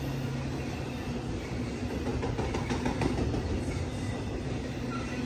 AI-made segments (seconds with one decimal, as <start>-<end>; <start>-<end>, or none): none